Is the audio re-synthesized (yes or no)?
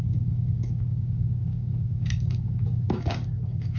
yes